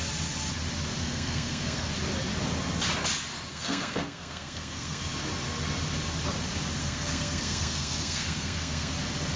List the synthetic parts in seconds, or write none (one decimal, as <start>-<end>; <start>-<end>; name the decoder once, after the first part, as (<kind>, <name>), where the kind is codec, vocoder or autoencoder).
1.0-1.9 (codec, SNAC); 3.5-5.0; 6.8-8.9